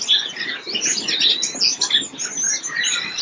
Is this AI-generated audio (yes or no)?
no